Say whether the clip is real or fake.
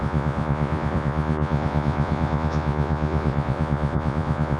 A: fake